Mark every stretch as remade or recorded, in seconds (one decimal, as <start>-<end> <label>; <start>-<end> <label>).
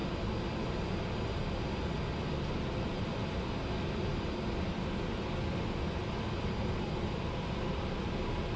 0.0-8.6 recorded